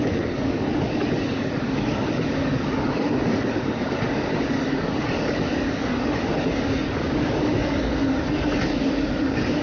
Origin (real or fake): fake